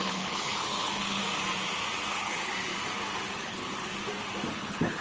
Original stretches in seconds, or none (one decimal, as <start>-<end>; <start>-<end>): 1.2-2.1; 2.7-3.3; 3.9-4.5